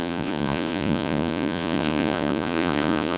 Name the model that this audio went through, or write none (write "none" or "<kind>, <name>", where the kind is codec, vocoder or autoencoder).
vocoder, Vocos